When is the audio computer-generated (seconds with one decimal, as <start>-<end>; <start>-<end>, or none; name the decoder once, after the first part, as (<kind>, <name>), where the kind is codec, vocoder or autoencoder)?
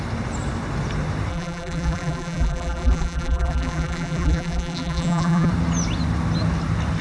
1.3-5.5 (vocoder, BigVGAN v2)